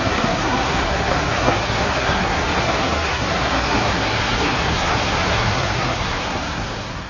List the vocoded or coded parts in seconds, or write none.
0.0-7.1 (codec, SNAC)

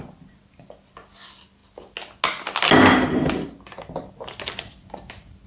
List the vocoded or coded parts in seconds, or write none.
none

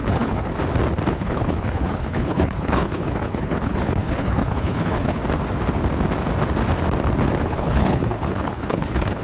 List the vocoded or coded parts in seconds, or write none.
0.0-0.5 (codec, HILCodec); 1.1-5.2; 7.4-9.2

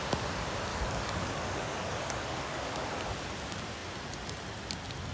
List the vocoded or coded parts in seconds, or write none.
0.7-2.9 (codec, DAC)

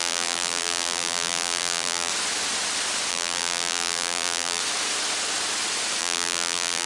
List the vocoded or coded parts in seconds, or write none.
0.0-2.1 (vocoder, BigVGAN v2); 3.1-4.6; 6.0-6.9

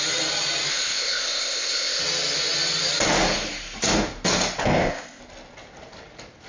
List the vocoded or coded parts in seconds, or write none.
0.7-2.0 (codec, ZipCodec); 4.6-5.2

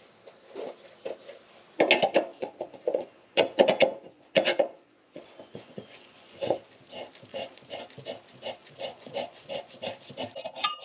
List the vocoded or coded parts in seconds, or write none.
2.3-6.6 (vocoder, Vocos); 7.3-7.9; 8.6-9.7